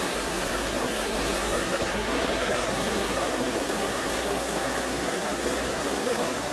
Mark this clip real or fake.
fake